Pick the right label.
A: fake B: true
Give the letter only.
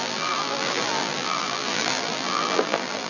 A